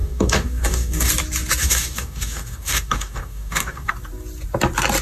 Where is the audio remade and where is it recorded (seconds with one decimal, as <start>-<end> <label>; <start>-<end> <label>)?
0.0-1.1 remade; 1.1-1.6 recorded; 1.6-3.9 remade; 3.9-5.0 recorded